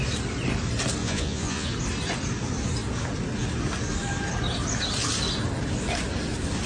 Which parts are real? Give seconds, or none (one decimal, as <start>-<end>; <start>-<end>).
0.0-1.0; 1.7-6.7